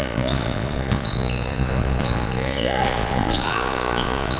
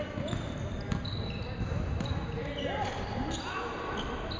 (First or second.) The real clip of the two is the second